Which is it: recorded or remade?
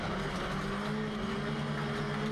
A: recorded